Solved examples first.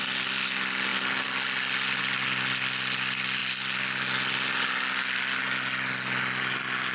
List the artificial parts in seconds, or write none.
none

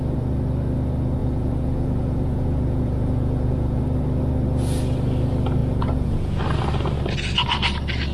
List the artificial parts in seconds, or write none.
1.2-3.8 (vocoder, Vocos); 5.6-6.4

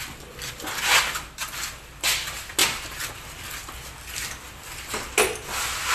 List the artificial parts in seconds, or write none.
2.6-3.1 (vocoder, BigVGAN v2)

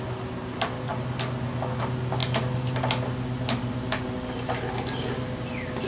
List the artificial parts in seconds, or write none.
none

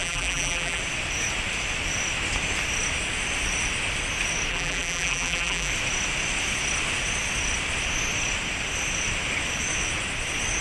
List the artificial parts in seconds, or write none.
0.0-0.8 (vocoder, BigVGAN v2); 4.5-5.7